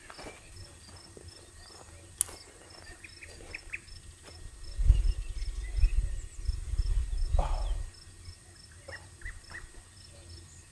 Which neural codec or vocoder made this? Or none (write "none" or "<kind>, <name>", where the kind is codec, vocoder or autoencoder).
none